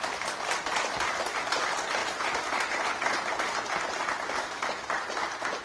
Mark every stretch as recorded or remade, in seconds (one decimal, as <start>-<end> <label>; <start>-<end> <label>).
0.0-5.6 recorded